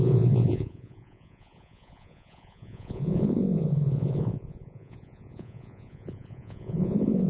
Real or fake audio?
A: fake